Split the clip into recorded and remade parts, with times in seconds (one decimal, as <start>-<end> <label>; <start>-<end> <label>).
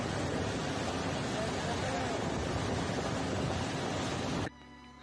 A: 0.0-5.0 recorded